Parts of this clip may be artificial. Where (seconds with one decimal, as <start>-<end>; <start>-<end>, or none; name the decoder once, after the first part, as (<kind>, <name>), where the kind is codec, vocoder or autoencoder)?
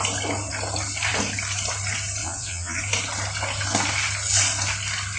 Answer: 2.2-2.8 (vocoder, Vocos)